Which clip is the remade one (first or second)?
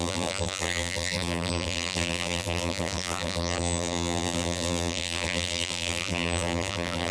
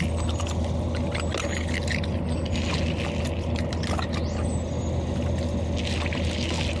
first